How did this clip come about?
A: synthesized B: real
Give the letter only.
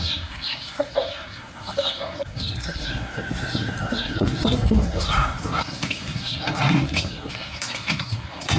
A